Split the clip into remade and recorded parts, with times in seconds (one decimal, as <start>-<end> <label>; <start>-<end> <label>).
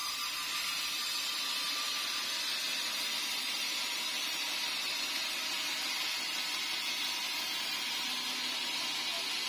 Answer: 0.0-5.1 remade; 5.1-9.5 recorded